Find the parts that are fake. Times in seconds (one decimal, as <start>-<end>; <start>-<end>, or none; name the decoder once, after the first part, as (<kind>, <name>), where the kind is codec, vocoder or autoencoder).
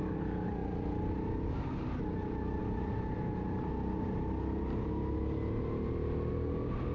none